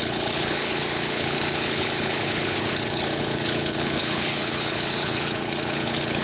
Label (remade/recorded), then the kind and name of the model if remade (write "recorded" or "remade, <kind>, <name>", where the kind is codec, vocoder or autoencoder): remade, codec, HILCodec